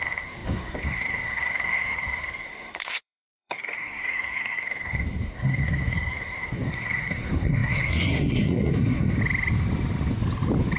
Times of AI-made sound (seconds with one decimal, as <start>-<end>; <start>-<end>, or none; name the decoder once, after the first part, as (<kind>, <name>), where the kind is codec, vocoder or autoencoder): 0.0-9.2 (codec, SNAC)